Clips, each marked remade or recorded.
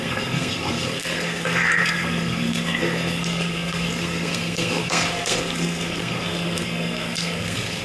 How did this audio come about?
remade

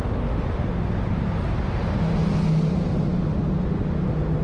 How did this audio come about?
recorded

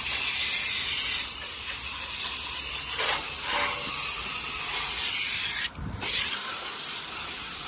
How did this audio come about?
recorded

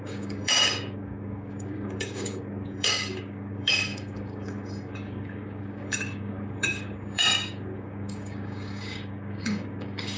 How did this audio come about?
remade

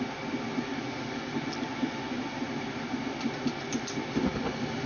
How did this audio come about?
recorded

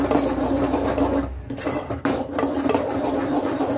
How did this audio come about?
recorded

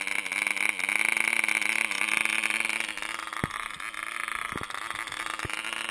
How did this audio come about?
recorded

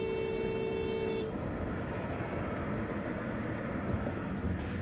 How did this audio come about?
recorded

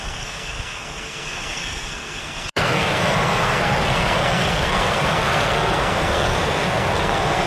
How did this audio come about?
remade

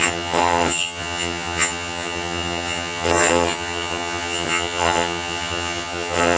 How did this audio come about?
remade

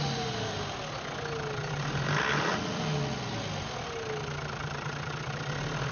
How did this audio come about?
recorded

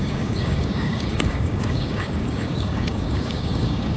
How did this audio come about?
remade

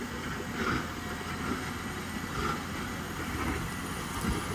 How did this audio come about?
recorded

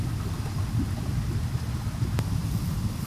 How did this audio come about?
recorded